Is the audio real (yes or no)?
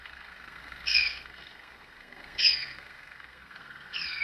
no